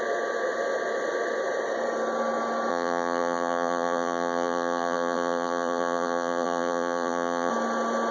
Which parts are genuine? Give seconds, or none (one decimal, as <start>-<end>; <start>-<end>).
0.0-2.7; 7.5-8.1